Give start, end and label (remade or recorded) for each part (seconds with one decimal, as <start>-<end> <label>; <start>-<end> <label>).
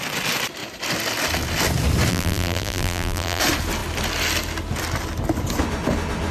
0.0-2.1 recorded; 2.1-3.4 remade; 3.4-6.3 recorded